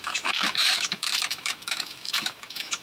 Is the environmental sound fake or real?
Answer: fake